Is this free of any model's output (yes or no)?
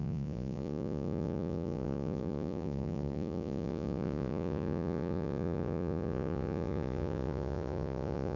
no